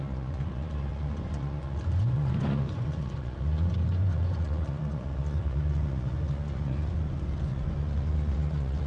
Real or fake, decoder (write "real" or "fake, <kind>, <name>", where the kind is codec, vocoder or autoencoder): fake, vocoder, Vocos